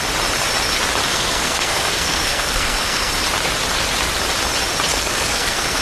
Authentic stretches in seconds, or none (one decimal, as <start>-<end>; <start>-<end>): 0.0-1.1; 3.1-4.9

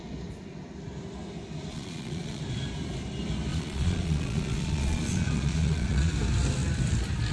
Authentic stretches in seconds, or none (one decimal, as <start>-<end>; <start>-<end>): 0.0-1.7; 2.4-3.5; 6.1-7.3

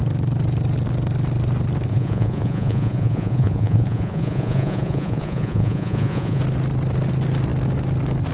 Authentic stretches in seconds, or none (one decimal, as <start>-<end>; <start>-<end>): 0.0-1.9; 6.4-8.3

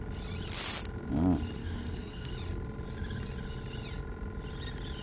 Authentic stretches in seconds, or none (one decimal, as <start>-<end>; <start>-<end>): 0.0-1.6; 2.3-5.0